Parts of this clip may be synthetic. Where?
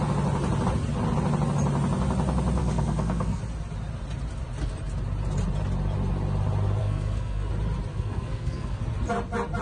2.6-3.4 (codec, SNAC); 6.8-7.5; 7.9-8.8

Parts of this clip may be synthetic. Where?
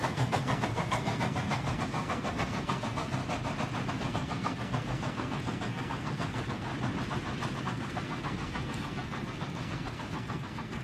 0.0-3.2 (codec, SNAC); 3.9-6.7; 7.6-10.8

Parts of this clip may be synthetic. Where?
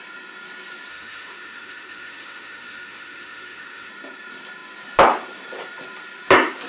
0.9-3.9 (autoencoder, DAC-VAE)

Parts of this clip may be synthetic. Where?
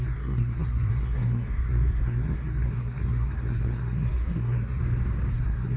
0.0-4.8 (codec, SNAC); 5.3-5.8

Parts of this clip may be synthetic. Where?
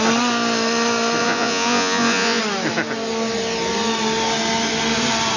1.2-2.4 (vocoder, Vocos)